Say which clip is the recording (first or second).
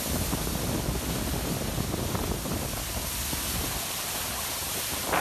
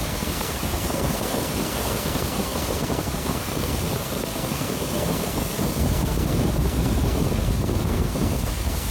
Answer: first